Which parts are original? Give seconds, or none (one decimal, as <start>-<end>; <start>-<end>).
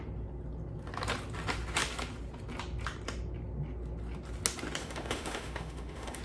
0.0-4.8